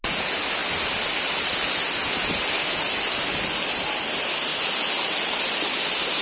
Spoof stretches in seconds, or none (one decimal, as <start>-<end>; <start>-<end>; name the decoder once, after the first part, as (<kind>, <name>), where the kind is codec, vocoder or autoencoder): none